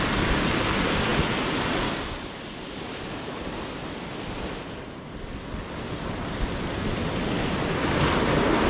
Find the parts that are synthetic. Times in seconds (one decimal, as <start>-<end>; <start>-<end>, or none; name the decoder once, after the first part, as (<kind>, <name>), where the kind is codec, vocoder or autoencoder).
none